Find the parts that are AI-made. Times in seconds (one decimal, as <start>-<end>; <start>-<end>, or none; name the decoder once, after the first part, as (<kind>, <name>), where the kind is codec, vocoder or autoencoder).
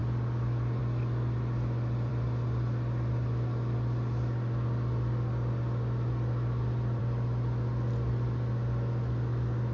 none